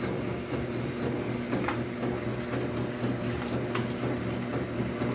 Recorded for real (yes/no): yes